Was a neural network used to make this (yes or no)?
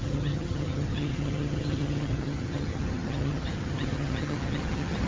yes